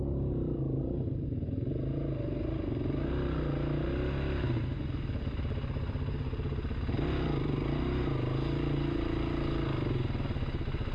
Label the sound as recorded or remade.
recorded